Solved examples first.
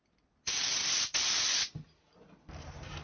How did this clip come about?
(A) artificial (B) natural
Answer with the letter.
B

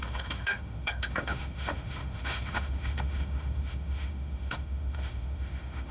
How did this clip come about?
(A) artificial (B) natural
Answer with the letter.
A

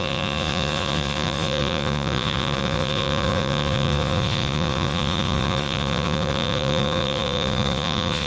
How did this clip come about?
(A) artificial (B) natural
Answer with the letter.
A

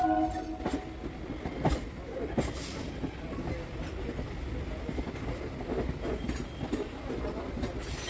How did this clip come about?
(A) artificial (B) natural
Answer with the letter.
B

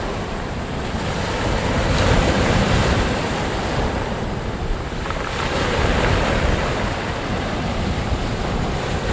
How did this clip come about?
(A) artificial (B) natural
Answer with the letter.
A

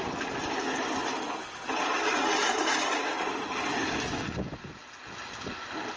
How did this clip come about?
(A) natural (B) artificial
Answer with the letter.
A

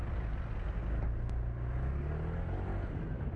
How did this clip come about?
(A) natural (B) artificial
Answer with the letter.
A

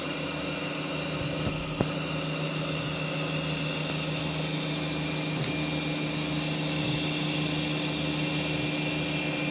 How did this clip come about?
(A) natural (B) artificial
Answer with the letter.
A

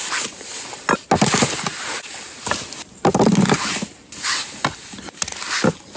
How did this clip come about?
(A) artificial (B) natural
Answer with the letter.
B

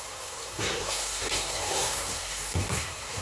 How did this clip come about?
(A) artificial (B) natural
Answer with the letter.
A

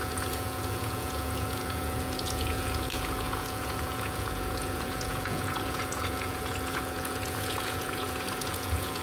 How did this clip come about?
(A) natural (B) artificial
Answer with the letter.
B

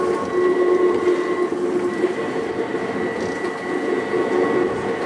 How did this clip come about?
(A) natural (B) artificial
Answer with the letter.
A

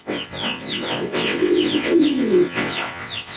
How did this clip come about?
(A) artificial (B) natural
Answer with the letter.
A